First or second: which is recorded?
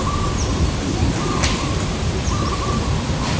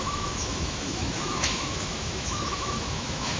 first